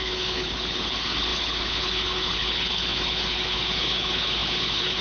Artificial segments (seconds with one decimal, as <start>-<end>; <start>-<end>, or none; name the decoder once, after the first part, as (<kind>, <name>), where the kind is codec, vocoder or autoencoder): 0.0-5.0 (codec, HILCodec)